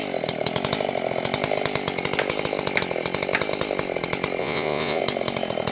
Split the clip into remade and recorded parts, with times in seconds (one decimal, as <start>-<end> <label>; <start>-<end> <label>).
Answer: 0.0-4.4 recorded; 4.4-5.0 remade; 5.0-5.7 recorded